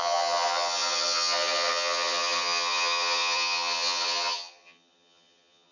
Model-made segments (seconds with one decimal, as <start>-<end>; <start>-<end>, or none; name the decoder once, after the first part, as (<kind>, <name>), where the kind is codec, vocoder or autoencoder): 0.0-5.7 (vocoder, HiFi-GAN)

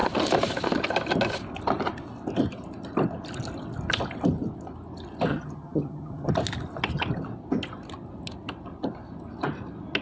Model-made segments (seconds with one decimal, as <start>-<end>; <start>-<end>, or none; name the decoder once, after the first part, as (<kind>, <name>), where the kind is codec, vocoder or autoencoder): 5.3-6.3 (vocoder, HiFi-GAN)

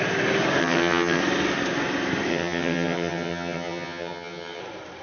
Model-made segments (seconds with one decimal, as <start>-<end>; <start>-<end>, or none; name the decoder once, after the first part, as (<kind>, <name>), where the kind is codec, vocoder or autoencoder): 0.6-1.2 (vocoder, HiFi-GAN); 2.3-4.6

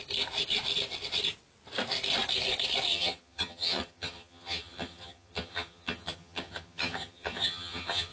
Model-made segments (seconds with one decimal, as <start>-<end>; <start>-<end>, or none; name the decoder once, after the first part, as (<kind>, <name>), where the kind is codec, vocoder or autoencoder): 2.9-8.1 (vocoder, HiFi-GAN)

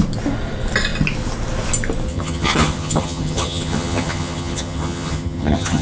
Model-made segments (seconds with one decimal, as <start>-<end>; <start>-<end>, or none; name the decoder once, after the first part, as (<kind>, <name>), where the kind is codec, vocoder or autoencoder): 2.1-5.8 (vocoder, HiFi-GAN)

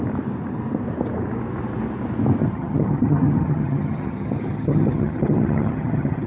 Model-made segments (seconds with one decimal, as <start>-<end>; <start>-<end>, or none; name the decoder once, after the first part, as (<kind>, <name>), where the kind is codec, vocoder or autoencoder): 2.4-6.3 (vocoder, HiFi-GAN)